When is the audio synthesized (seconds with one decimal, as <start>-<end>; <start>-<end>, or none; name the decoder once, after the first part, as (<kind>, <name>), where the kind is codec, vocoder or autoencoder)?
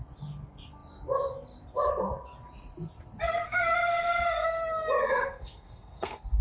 3.3-6.4 (codec, SNAC)